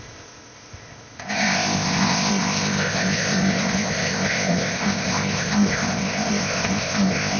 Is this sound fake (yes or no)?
yes